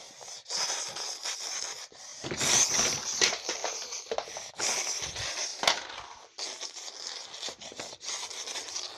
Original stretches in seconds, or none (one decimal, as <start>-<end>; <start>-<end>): 0.0-9.0